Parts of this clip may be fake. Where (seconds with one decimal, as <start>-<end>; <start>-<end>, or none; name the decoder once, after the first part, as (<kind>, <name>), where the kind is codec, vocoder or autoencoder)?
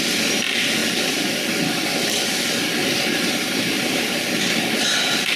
0.8-1.5 (vocoder, BigVGAN v2); 2.8-5.0